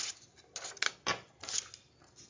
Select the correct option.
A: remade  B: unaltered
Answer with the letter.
B